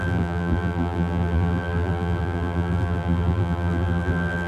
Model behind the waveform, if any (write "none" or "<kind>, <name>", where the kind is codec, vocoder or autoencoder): vocoder, BigVGAN v2